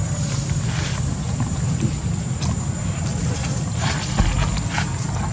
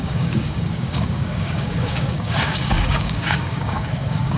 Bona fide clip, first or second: first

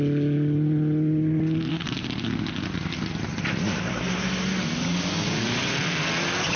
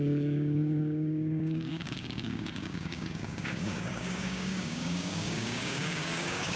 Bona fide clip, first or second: first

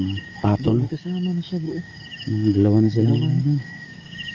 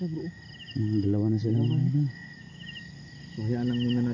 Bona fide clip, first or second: second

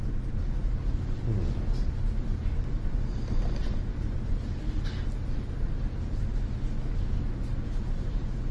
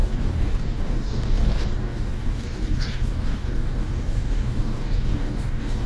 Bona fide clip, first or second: first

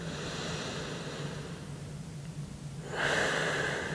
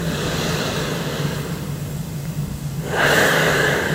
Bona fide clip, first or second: first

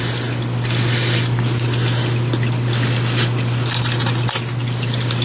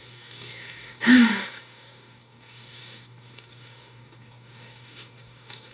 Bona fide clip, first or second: first